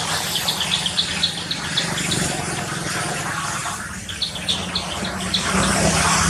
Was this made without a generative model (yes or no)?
yes